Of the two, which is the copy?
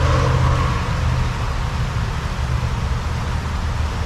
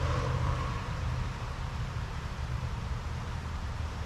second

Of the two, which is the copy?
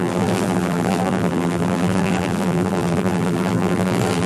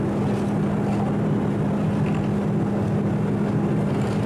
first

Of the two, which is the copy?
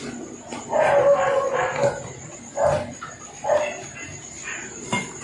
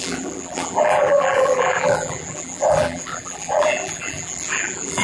second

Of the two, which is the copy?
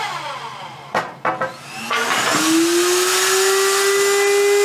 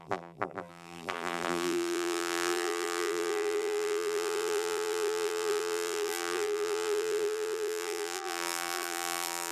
second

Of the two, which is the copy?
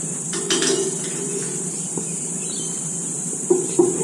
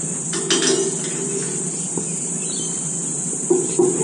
first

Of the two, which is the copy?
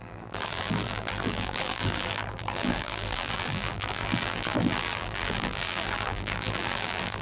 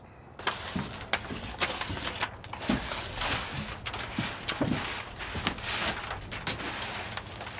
first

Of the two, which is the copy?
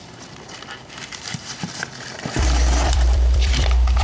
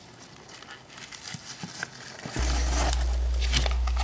first